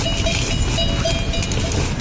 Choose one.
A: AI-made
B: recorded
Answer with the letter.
B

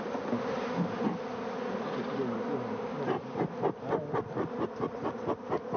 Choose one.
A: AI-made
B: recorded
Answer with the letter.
B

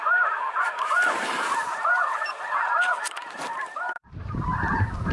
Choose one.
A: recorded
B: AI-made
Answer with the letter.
B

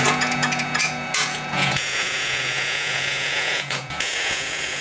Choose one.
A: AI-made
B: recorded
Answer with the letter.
A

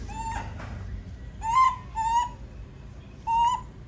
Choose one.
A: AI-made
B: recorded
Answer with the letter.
B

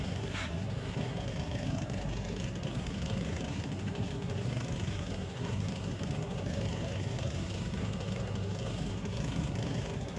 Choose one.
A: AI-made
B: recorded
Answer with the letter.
A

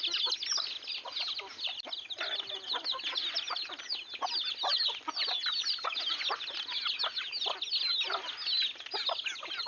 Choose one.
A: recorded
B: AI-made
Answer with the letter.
A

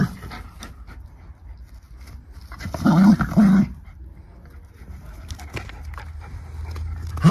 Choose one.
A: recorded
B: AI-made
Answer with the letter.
A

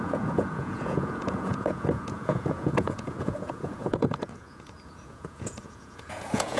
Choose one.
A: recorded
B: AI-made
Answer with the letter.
B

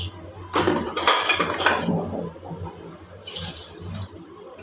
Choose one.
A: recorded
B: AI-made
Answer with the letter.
B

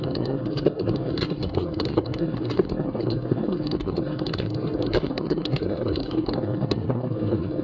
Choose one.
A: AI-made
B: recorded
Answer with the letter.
A